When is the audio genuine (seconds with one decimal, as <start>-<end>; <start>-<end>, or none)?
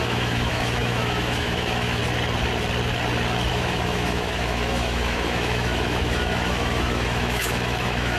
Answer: 2.0-3.5